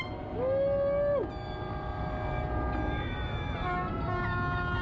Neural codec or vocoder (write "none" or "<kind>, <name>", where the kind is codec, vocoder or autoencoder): none